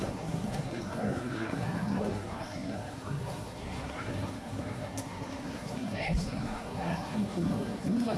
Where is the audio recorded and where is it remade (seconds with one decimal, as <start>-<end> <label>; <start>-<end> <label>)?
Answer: 0.0-8.2 remade